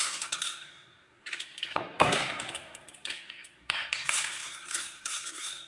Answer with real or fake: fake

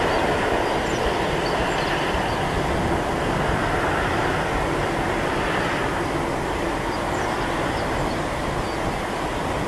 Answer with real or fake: real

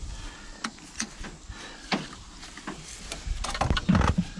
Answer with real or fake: real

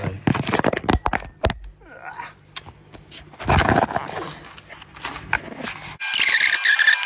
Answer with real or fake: real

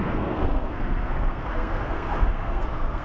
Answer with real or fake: fake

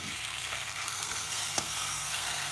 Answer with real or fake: fake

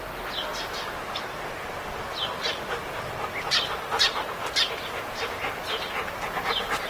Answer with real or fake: real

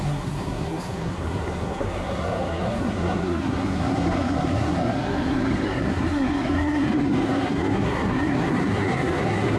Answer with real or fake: fake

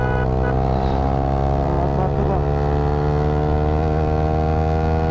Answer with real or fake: real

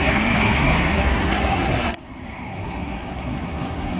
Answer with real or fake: fake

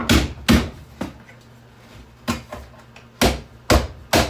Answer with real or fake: real